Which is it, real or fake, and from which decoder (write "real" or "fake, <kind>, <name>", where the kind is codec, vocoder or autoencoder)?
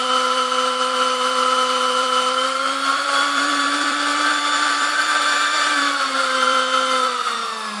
fake, vocoder, BigVGAN v2